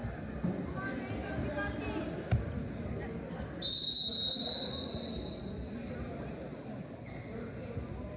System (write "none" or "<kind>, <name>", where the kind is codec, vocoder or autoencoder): none